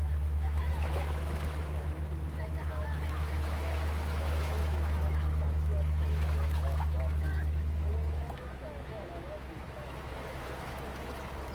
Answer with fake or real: fake